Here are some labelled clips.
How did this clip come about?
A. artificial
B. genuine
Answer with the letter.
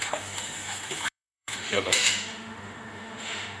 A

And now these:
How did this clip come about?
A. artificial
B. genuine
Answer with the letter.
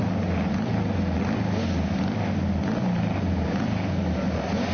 B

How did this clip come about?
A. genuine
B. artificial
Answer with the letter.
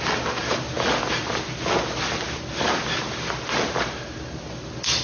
A